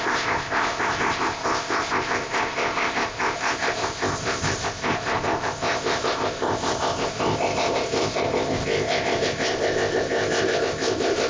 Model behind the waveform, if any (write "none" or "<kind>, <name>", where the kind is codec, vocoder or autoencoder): codec, ZipCodec